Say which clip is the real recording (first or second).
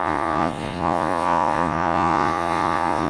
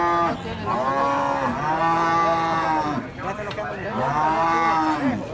second